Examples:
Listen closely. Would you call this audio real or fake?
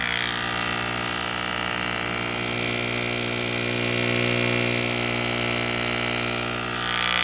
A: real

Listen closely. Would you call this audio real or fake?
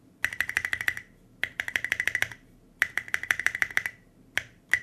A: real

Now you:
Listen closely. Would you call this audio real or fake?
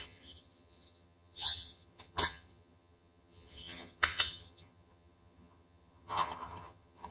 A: fake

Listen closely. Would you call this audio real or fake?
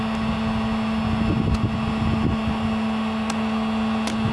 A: real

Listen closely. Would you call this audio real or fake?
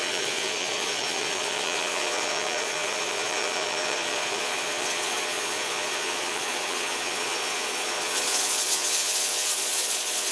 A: fake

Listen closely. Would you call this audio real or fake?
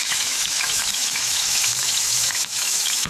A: fake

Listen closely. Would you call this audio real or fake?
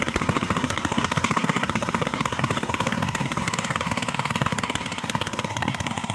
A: fake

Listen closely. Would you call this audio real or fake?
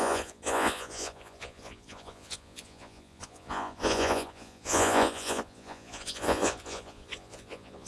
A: fake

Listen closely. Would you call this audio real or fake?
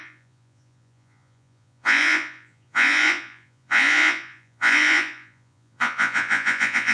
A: fake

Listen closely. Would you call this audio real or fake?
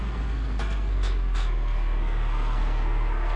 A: fake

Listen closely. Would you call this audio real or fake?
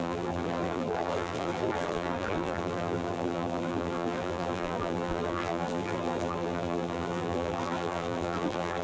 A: fake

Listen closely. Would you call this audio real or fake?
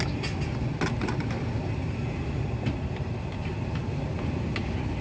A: real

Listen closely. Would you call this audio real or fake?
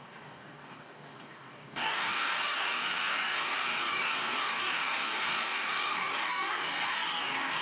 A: fake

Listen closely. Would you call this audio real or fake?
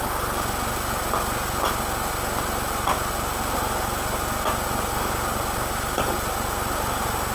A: real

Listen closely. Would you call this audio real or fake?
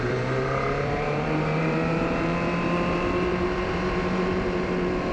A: fake